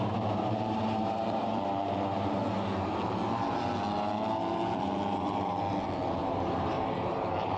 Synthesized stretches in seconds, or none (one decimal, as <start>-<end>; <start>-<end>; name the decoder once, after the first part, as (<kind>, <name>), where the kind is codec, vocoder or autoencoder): 0.0-2.4 (vocoder, BigVGAN v2); 6.2-7.6